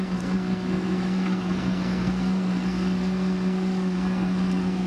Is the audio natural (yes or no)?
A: no